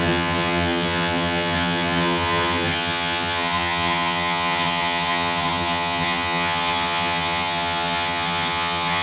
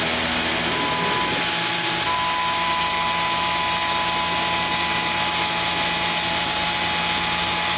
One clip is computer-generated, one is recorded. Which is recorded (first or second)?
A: second